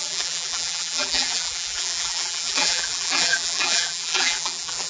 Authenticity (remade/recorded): remade